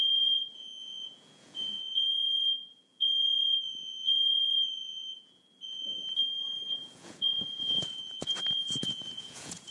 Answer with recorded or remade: remade